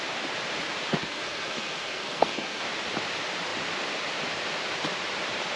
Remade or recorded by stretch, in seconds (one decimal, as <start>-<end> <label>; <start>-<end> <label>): 0.0-1.0 recorded; 1.0-2.6 remade; 2.6-5.6 recorded